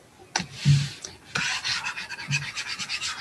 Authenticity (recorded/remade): recorded